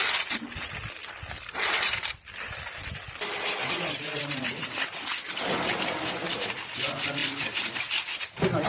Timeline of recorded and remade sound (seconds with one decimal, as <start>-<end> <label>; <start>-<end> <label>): 0.0-8.7 recorded